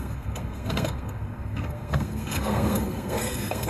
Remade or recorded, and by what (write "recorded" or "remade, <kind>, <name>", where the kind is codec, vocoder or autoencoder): remade, codec, SNAC